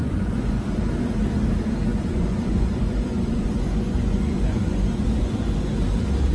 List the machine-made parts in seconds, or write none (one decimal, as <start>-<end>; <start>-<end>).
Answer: 0.0-0.6; 1.9-5.7